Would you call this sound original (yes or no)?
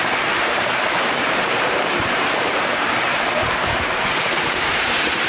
no